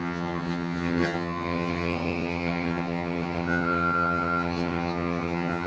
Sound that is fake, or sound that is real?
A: fake